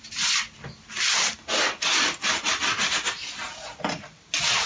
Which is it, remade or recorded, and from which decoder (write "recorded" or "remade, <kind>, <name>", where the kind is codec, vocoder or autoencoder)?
recorded